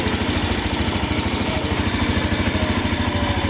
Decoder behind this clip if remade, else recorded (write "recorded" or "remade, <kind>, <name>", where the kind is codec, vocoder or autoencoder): recorded